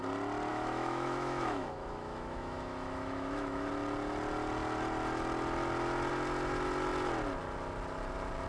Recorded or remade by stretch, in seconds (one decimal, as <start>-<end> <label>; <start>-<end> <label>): 0.0-0.5 recorded; 0.5-3.7 remade; 3.7-8.5 recorded